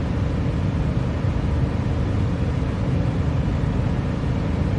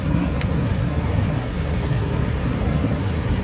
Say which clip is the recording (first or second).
first